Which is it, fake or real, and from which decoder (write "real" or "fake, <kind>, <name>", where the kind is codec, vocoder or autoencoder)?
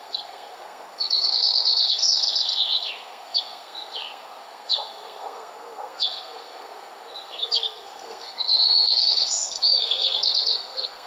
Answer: fake, codec, SNAC